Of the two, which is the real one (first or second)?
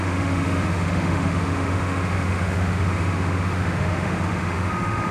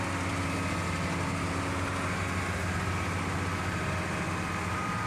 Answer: second